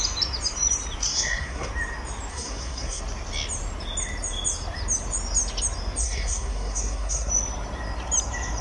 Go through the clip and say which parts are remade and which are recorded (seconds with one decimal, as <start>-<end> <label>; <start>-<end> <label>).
0.0-1.1 recorded; 1.1-1.7 remade; 1.7-2.3 recorded; 2.3-3.0 remade; 3.0-6.0 recorded; 6.0-7.3 remade; 7.3-8.6 recorded